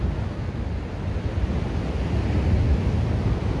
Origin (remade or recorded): recorded